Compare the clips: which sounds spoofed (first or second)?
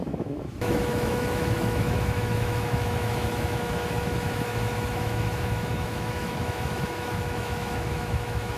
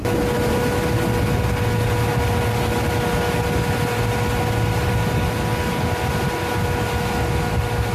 first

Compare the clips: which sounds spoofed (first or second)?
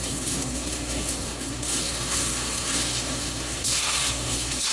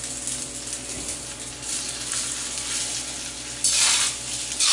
first